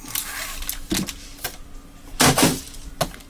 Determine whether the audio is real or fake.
real